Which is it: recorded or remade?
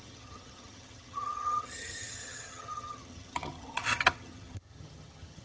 remade